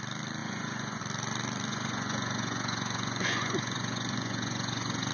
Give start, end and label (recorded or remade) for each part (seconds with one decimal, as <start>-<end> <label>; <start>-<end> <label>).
0.0-0.4 recorded; 0.4-1.0 remade; 1.0-1.7 recorded; 1.7-5.1 remade